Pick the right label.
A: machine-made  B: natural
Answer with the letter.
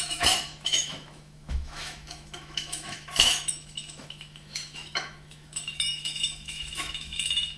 A